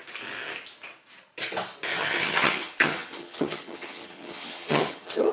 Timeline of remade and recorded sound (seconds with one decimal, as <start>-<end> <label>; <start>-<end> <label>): 0.0-1.9 recorded; 1.9-5.3 remade